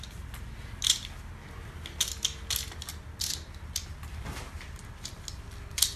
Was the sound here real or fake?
real